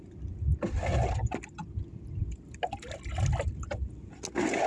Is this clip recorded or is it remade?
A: recorded